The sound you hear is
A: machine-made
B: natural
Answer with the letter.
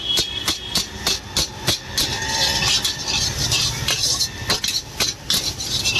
B